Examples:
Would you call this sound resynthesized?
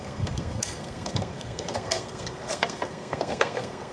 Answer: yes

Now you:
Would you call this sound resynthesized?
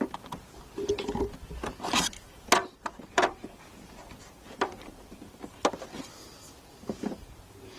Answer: yes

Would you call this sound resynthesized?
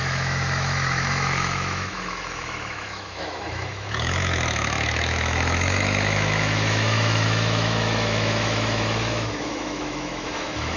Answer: yes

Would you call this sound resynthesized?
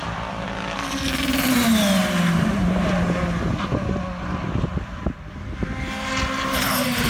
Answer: no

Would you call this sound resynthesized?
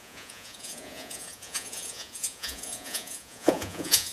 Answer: yes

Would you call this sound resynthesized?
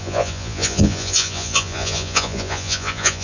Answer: yes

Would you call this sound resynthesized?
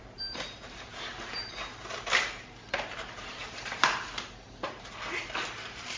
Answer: yes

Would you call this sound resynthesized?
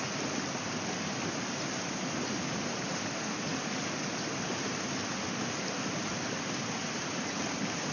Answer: no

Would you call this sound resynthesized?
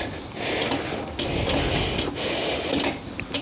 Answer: no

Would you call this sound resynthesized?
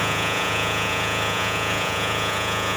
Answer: yes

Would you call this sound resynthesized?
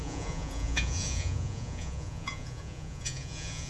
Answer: yes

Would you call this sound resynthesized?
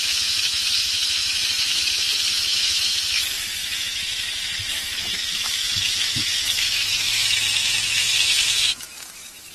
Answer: yes